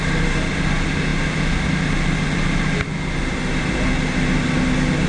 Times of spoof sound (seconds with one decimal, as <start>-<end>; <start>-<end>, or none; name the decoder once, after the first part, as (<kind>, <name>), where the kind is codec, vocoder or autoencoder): none